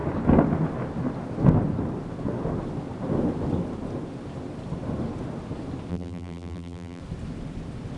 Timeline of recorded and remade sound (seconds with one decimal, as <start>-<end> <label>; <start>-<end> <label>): 0.0-5.9 recorded; 5.9-7.0 remade; 7.0-8.0 recorded